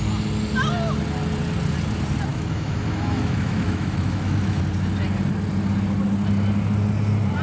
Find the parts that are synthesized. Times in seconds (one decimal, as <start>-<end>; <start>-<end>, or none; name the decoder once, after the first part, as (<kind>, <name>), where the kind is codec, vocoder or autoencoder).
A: 2.3-4.6 (autoencoder, DAC-VAE)